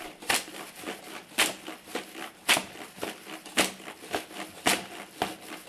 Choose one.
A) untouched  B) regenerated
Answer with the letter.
A